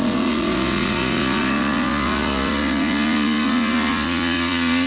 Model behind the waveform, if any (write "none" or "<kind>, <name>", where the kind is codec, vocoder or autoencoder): vocoder, Vocos